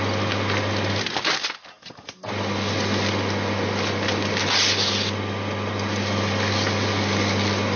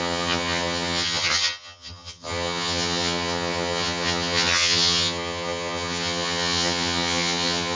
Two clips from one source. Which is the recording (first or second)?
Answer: first